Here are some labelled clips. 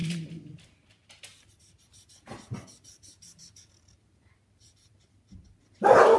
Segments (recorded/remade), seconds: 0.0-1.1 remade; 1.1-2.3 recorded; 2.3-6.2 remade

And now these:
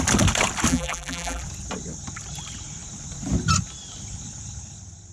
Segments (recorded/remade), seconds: 0.0-0.7 recorded; 0.7-1.4 remade; 1.4-5.1 recorded

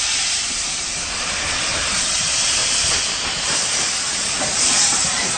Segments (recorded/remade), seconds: 0.0-2.6 remade; 2.6-3.8 recorded; 3.8-5.4 remade